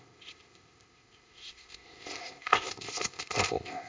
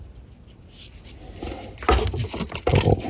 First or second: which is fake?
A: first